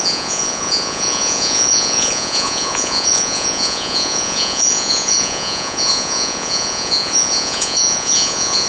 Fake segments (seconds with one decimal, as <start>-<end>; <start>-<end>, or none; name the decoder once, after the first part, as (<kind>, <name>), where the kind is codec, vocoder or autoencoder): 0.0-8.7 (vocoder, Vocos)